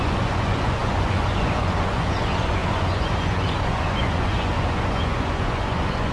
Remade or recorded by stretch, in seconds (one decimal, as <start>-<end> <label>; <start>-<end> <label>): 0.0-6.1 remade